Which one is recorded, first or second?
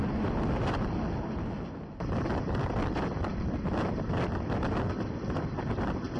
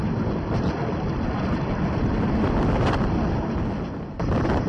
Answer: first